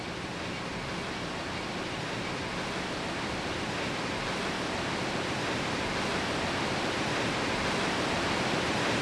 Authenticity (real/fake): real